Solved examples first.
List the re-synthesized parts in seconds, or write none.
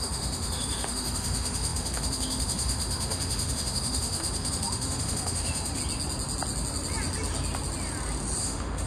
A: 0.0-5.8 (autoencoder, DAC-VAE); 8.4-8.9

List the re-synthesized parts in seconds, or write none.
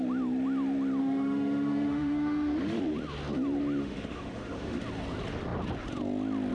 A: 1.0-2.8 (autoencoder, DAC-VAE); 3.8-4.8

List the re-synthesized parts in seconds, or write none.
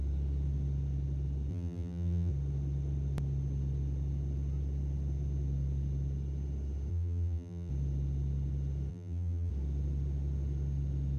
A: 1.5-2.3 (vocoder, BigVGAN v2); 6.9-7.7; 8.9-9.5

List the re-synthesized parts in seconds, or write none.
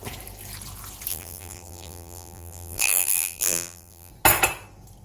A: 1.1-4.1 (vocoder, BigVGAN v2)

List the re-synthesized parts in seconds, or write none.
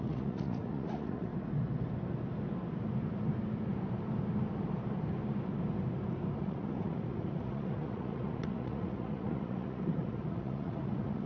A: 0.0-1.3 (vocoder, Vocos); 6.4-11.3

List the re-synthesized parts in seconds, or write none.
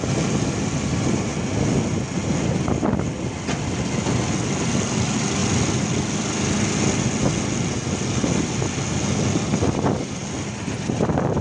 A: none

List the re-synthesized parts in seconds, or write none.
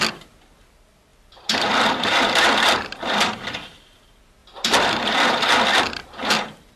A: 1.1-3.8 (vocoder, BigVGAN v2); 4.4-5.8